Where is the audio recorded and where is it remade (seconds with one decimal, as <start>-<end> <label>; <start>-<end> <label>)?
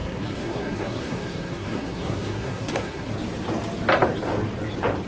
0.0-3.1 remade; 3.1-5.1 recorded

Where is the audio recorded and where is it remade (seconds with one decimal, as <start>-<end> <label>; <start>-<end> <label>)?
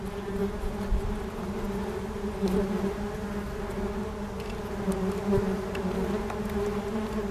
0.0-7.3 recorded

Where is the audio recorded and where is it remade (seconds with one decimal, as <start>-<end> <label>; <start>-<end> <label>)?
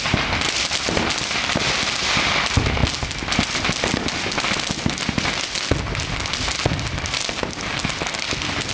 0.0-8.7 recorded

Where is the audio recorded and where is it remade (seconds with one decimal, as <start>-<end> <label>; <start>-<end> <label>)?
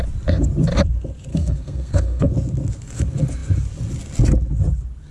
0.0-1.3 recorded; 1.3-2.3 remade; 2.3-5.1 recorded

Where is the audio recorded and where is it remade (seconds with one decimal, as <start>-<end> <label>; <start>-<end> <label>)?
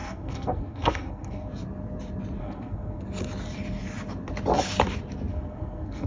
0.0-1.5 remade; 1.5-2.4 recorded; 2.4-3.0 remade; 3.0-5.3 recorded; 5.3-6.1 remade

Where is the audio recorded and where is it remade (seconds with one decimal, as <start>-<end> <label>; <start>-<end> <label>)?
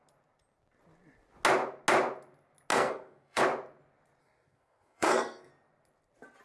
0.0-2.7 recorded; 2.7-3.4 remade; 3.4-4.2 recorded; 4.2-5.5 remade; 5.5-6.4 recorded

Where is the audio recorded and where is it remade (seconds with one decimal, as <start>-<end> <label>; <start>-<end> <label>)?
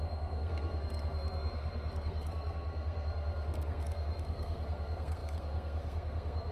0.0-6.5 remade